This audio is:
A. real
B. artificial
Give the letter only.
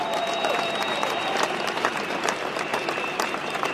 B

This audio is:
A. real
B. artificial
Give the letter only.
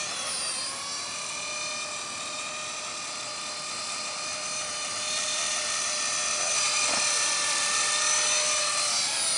A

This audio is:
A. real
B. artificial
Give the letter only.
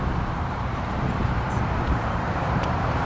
B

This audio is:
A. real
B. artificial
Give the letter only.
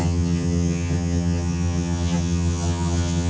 B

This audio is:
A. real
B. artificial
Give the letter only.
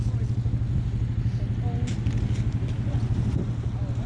A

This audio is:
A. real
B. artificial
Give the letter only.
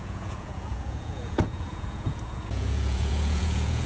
B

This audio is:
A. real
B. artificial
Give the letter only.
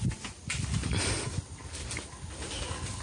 A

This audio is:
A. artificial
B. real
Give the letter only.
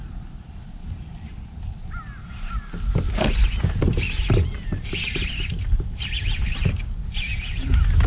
B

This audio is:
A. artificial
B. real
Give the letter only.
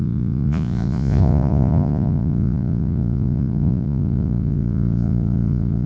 A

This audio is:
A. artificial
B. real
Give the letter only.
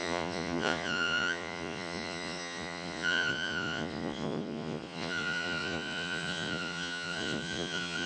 A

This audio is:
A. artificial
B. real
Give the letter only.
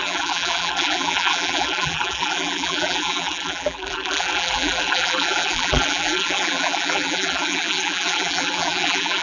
A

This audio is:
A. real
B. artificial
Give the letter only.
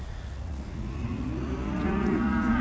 B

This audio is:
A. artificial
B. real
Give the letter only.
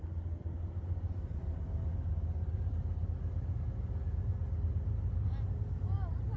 B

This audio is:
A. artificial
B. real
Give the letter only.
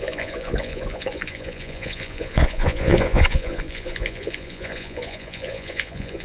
A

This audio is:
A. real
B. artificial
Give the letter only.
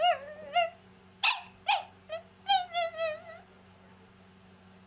A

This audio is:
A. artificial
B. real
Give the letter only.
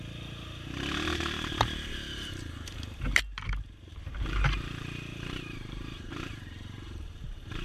A